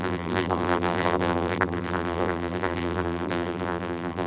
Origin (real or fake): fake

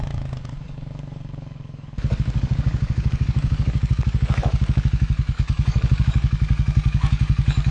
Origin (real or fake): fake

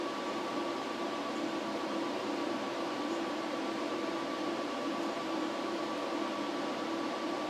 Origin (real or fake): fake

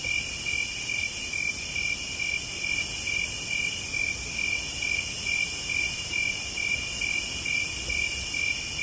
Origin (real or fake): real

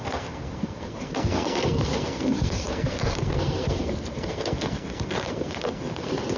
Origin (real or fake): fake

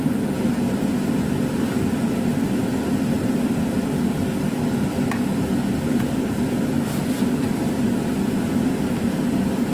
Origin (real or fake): real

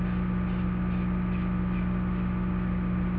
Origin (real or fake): real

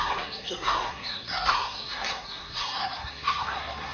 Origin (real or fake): fake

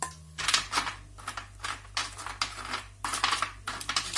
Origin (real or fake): real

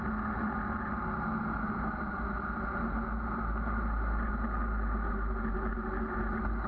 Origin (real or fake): real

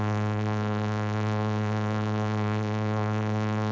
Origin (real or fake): fake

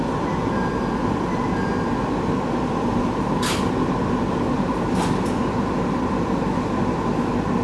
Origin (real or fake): fake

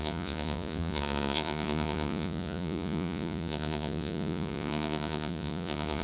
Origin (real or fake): fake